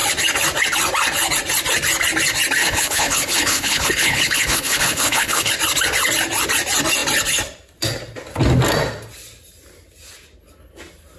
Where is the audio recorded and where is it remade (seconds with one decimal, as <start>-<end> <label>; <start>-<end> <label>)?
0.0-2.6 recorded; 2.6-5.5 remade; 5.5-11.2 recorded